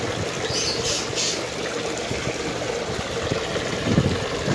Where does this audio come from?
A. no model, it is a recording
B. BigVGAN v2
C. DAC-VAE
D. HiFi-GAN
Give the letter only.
A